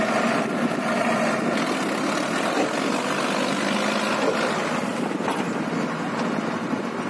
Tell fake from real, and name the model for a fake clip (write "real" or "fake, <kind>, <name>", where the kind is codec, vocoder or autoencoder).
real